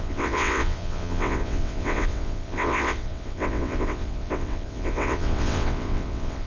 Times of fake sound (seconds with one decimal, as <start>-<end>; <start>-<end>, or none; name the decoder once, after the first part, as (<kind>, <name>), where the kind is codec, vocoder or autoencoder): 0.0-6.5 (vocoder, WaveNeXt)